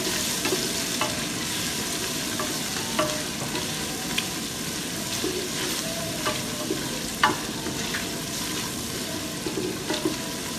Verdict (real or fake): real